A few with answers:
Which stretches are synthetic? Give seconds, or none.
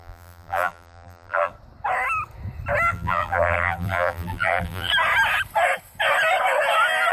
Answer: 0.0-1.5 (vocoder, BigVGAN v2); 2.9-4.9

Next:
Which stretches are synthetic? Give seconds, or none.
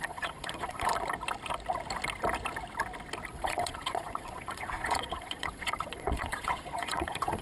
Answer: 0.0-0.9 (vocoder, Vocos); 3.3-7.4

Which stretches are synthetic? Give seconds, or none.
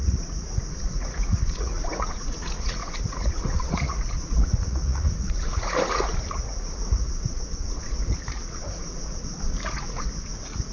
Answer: 0.0-10.7 (vocoder, Vocos)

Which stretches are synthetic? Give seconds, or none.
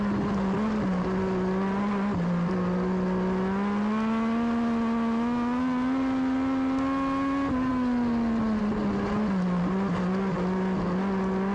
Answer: none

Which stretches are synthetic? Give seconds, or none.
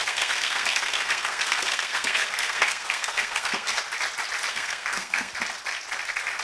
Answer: 0.0-3.8 (codec, SNAC); 4.5-5.3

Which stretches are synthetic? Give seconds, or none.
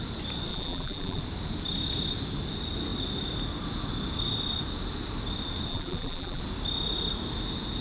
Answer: 0.5-1.2 (vocoder, BigVGAN v2); 5.7-6.4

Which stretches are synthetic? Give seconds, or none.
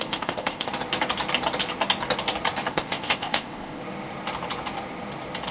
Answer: 0.0-0.7 (codec, ZipCodec); 2.7-3.8